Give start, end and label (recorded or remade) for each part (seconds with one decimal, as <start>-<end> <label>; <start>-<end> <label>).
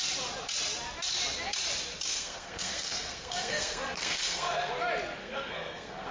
0.0-2.1 recorded; 2.1-4.7 remade; 4.7-5.2 recorded; 5.2-6.1 remade